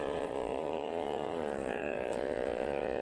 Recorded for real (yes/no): no